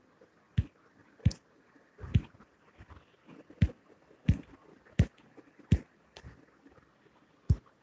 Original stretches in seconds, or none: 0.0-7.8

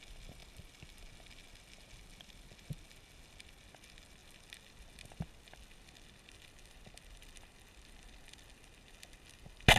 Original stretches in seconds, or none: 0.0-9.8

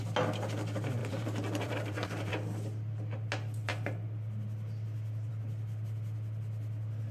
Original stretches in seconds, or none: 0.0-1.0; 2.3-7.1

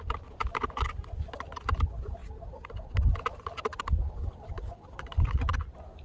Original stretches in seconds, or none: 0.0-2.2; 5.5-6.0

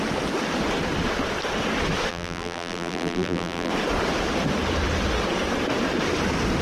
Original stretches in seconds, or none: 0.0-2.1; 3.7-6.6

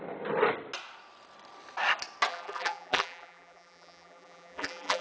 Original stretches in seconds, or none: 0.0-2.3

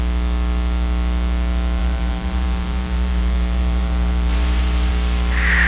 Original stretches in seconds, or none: 0.0-1.8; 4.9-5.7

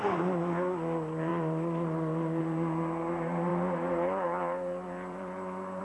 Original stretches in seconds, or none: 0.0-1.3; 2.4-3.5